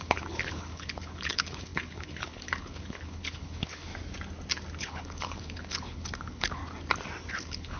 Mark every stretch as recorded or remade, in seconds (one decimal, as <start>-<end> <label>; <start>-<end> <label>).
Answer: 0.0-3.9 remade; 3.9-4.8 recorded; 4.8-6.6 remade; 6.6-7.3 recorded; 7.3-7.8 remade